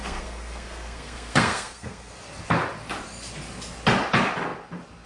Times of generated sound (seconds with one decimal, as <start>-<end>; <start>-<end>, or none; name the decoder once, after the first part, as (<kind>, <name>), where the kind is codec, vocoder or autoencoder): 0.0-2.1 (codec, SNAC)